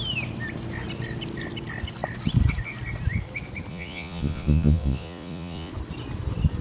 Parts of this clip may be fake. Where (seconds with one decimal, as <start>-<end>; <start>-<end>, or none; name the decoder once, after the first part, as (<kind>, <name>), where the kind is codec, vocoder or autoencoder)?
3.7-5.7 (vocoder, Vocos)